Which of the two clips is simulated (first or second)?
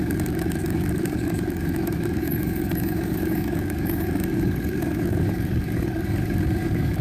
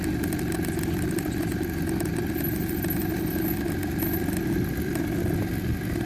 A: first